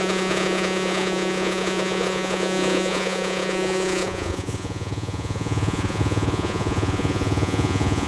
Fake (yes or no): yes